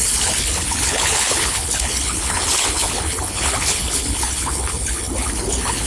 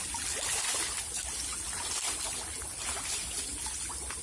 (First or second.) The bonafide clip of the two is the second